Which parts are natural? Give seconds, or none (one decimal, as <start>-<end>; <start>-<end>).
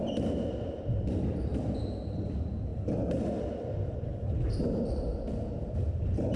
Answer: 2.7-3.6; 5.1-5.6